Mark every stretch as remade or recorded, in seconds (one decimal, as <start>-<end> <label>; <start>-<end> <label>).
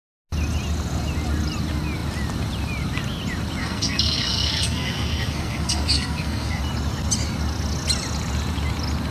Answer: 0.0-3.6 recorded; 3.6-6.6 remade; 6.6-9.1 recorded